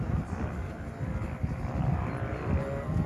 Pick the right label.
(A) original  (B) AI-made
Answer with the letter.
A